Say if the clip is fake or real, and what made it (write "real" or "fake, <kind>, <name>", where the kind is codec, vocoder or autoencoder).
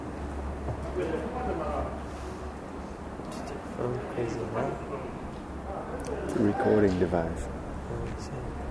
real